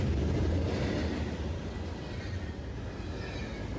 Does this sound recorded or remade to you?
recorded